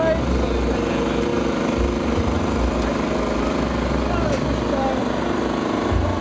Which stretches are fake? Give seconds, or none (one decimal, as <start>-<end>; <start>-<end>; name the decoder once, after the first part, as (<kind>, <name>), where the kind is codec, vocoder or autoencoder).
none